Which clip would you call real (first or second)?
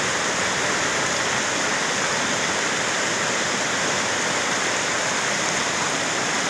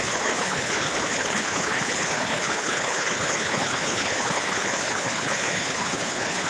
first